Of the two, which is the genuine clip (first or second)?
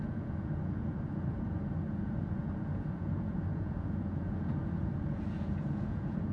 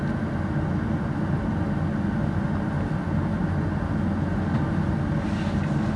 second